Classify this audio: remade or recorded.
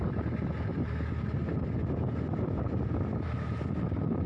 recorded